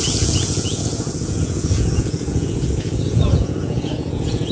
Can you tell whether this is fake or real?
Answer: fake